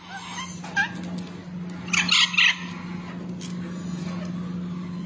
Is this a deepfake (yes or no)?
no